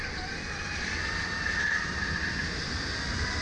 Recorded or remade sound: recorded